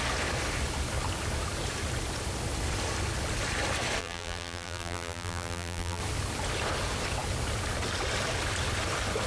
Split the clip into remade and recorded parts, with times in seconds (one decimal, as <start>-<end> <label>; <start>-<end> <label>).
0.0-4.0 recorded; 4.0-6.0 remade; 6.0-9.3 recorded